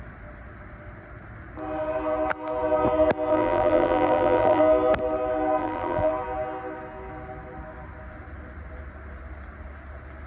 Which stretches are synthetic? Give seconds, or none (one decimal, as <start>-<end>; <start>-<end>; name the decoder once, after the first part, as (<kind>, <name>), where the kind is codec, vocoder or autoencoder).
3.3-4.6 (vocoder, BigVGAN v2); 5.6-6.1